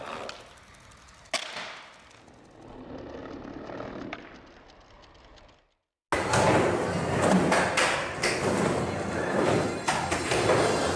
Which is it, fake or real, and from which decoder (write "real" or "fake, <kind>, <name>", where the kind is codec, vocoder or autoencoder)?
real